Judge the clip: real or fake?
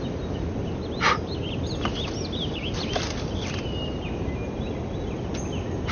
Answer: real